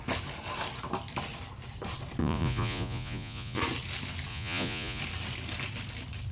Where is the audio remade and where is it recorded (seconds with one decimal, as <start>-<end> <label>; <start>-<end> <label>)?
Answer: 0.0-2.2 recorded; 2.2-3.6 remade; 3.6-4.3 recorded; 4.3-5.0 remade; 5.0-6.3 recorded